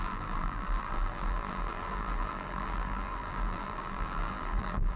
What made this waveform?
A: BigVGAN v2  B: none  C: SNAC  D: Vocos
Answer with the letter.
A